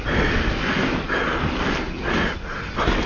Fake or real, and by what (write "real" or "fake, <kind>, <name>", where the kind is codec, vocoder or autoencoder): real